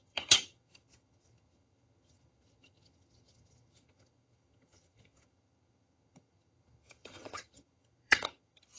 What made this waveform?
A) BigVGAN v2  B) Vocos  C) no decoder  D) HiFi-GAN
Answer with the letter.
D